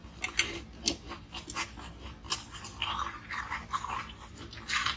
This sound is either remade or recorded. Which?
recorded